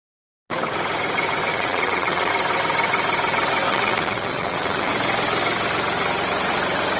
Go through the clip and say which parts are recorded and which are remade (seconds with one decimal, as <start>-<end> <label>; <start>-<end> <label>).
0.0-1.5 recorded; 1.5-2.3 remade; 2.3-3.7 recorded; 3.7-4.9 remade; 4.9-7.0 recorded

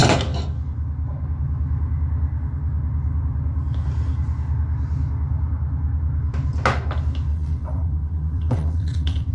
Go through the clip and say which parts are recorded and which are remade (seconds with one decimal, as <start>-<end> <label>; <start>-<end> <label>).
0.0-7.3 recorded; 7.3-9.3 remade

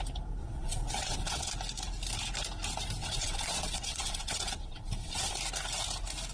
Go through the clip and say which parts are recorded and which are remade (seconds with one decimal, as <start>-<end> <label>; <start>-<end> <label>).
0.0-0.4 recorded; 0.4-1.5 remade; 1.5-3.0 recorded; 3.0-5.3 remade; 5.3-6.3 recorded

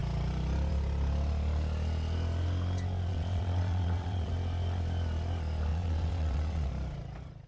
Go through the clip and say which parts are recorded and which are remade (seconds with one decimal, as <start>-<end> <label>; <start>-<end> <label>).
0.0-3.1 recorded; 3.1-4.3 remade; 4.3-5.7 recorded; 5.7-6.7 remade; 6.7-7.5 recorded

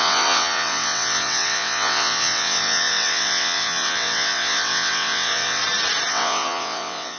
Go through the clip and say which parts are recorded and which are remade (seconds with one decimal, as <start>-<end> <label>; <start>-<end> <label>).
0.0-5.6 remade; 5.6-6.1 recorded; 6.1-7.2 remade

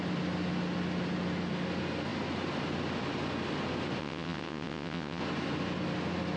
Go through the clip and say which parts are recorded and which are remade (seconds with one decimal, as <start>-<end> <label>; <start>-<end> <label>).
0.0-4.0 recorded; 4.0-5.2 remade; 5.2-6.4 recorded

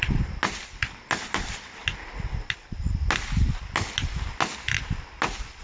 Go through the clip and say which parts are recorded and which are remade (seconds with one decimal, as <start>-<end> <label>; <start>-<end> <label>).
0.0-5.6 recorded

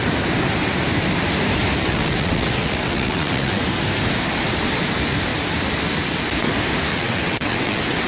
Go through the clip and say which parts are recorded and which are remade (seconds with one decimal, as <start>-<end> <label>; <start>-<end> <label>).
0.0-1.8 recorded; 1.8-3.6 remade; 3.6-6.9 recorded; 6.9-8.1 remade